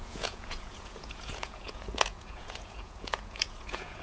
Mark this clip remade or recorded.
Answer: remade